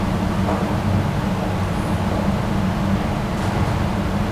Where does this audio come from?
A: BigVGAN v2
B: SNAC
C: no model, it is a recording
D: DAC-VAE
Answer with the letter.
C